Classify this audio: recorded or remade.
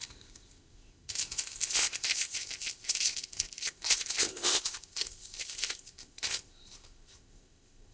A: remade